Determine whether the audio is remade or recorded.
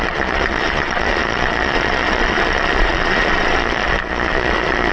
remade